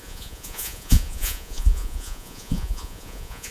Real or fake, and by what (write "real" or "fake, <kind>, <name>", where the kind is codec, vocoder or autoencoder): fake, vocoder, Vocos